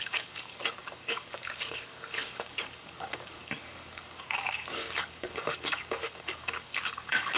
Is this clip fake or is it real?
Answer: fake